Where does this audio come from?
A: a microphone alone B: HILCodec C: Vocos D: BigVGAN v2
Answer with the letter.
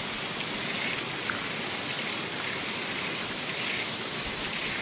A